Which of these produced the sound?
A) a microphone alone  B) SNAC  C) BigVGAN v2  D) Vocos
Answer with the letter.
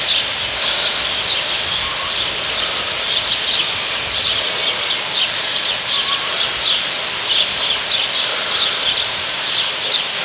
A